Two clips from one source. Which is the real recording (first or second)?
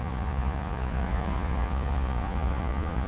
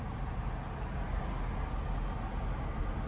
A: second